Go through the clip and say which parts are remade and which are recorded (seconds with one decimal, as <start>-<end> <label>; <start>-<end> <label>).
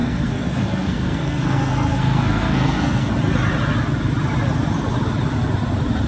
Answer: 0.0-3.1 remade; 3.1-6.1 recorded